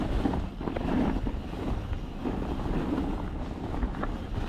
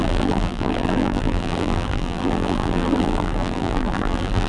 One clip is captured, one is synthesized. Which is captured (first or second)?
first